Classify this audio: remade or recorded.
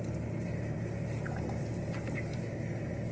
recorded